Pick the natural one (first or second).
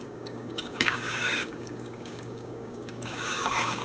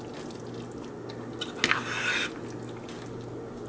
second